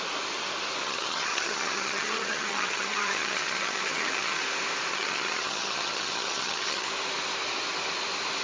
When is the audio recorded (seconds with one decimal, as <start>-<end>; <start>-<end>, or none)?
0.0-0.8; 4.4-4.9; 6.9-8.4